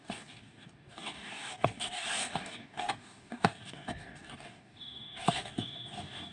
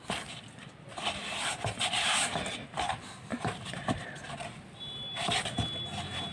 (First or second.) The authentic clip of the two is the second